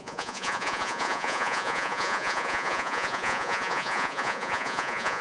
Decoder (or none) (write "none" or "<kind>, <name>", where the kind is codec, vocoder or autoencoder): vocoder, Vocos